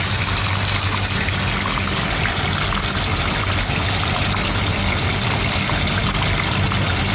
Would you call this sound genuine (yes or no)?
yes